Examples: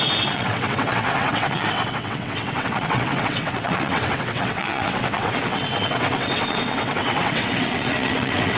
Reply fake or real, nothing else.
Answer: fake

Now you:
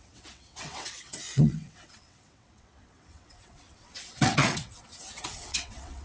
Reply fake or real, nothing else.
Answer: fake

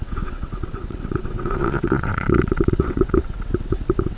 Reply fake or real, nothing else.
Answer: fake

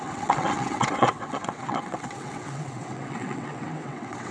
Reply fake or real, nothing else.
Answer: fake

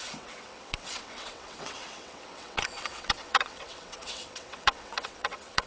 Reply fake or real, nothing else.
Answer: fake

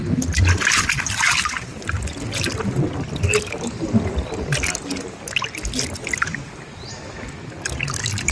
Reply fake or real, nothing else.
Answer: real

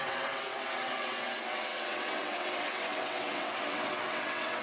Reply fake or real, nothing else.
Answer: fake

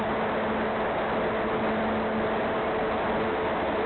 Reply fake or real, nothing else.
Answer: real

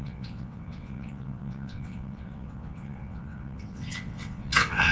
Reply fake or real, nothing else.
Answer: fake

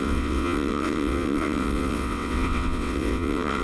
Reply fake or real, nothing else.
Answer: fake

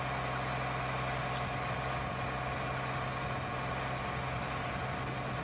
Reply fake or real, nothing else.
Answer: real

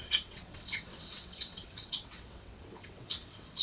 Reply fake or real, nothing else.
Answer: fake